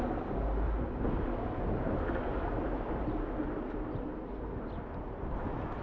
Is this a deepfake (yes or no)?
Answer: no